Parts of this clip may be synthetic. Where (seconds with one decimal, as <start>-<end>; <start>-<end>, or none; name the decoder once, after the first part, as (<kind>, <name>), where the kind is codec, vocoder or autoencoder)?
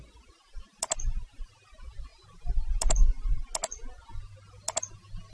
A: none